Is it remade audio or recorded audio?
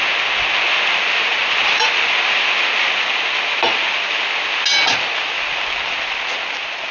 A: recorded